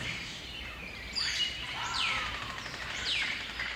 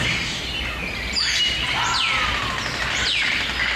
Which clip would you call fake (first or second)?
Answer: first